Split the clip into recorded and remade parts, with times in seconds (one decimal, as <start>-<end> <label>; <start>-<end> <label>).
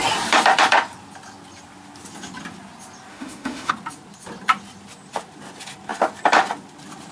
0.0-3.1 recorded; 3.1-3.7 remade; 3.7-7.1 recorded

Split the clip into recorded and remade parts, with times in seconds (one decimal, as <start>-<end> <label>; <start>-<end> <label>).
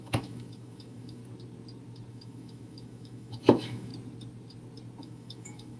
0.0-1.2 remade; 1.2-2.1 recorded; 2.1-3.9 remade; 3.9-5.0 recorded; 5.0-5.8 remade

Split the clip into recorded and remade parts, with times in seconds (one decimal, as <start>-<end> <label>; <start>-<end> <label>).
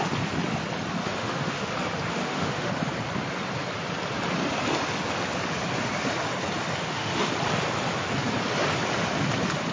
0.0-1.0 recorded; 1.0-1.7 remade; 1.7-2.2 recorded; 2.2-2.7 remade; 2.7-6.8 recorded; 6.8-7.3 remade; 7.3-9.7 recorded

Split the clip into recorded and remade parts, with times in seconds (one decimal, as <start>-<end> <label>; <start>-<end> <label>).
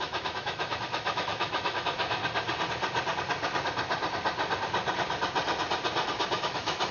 0.0-2.2 remade; 2.2-6.3 recorded; 6.3-6.9 remade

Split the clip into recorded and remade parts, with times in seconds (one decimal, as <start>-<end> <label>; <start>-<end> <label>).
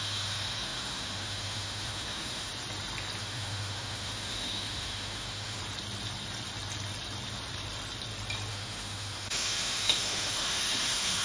0.0-2.5 remade; 2.5-3.2 recorded; 3.2-5.6 remade; 5.6-8.5 recorded; 8.5-11.2 remade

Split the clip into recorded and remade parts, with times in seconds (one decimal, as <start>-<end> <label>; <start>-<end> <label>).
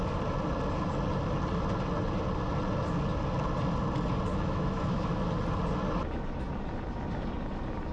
0.0-4.3 recorded; 4.3-5.3 remade; 5.3-7.9 recorded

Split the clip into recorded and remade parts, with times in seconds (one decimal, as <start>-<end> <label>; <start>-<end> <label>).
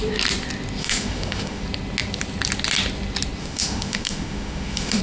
0.0-0.8 recorded; 0.8-1.6 remade; 1.6-3.4 recorded; 3.4-5.0 remade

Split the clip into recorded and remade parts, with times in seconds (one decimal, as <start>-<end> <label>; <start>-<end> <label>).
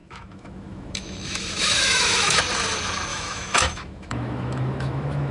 0.0-2.4 remade; 2.4-3.1 recorded; 3.1-5.3 remade